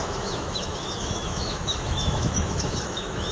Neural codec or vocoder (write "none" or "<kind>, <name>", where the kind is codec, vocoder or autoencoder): autoencoder, DAC-VAE